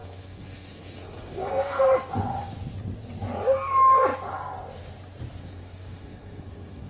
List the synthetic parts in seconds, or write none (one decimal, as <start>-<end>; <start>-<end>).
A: 0.0-1.8; 5.4-6.9